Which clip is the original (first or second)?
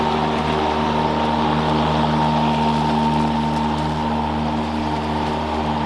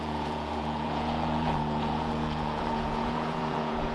first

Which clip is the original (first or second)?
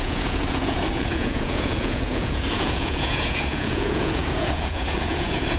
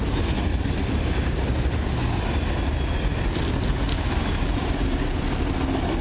second